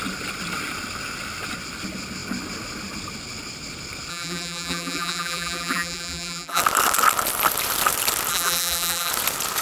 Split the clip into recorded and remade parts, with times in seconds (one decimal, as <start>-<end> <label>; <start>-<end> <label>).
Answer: 0.0-4.1 recorded; 4.1-6.6 remade; 6.6-8.3 recorded; 8.3-9.1 remade; 9.1-9.6 recorded